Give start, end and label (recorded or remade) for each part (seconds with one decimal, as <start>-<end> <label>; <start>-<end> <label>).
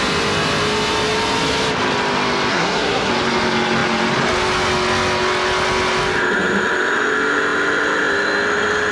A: 0.0-2.5 recorded; 2.5-3.1 remade; 3.1-8.9 recorded